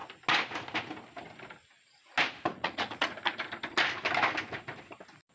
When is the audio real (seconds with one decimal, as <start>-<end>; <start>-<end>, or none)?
0.0-2.5; 3.4-5.3